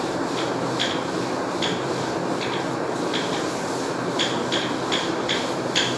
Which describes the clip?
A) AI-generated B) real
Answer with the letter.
B